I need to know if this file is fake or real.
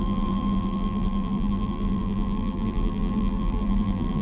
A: fake